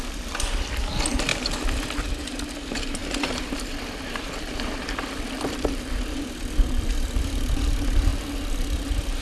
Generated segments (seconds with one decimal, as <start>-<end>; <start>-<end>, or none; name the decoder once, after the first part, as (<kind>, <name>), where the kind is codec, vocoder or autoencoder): 0.0-1.3 (vocoder, BigVGAN v2); 2.1-8.1